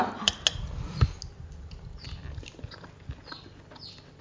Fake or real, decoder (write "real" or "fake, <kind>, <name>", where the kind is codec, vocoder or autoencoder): real